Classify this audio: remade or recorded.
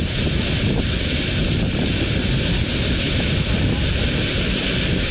recorded